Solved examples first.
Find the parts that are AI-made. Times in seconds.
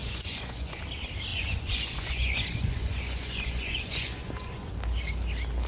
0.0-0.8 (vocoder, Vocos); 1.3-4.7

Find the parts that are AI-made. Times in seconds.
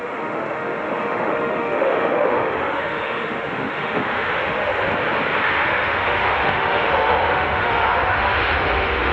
0.0-4.7 (autoencoder, DAC-VAE); 5.4-9.1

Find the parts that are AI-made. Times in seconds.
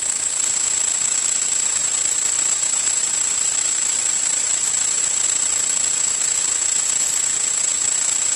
1.8-5.0 (vocoder, BigVGAN v2)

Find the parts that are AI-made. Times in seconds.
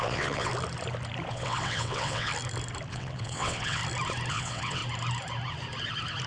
0.0-0.5 (vocoder, WaveNeXt); 1.3-2.3; 2.9-3.8; 4.3-4.8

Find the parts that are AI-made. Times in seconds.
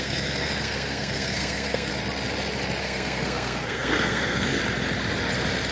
0.0-1.9 (codec, SNAC); 2.8-4.6